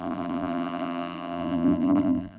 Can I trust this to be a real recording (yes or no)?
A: no